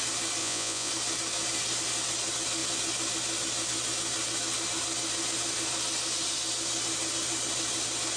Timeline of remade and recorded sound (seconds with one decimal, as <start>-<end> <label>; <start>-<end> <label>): 0.0-0.4 recorded; 0.4-0.9 remade; 0.9-8.2 recorded